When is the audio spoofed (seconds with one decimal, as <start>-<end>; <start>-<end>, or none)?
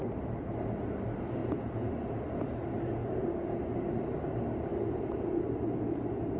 1.4-1.9; 3.0-3.6